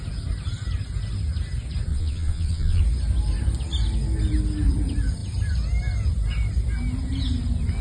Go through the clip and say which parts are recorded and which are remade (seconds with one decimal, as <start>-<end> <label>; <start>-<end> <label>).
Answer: 0.0-1.9 recorded; 1.9-2.8 remade; 2.8-7.8 recorded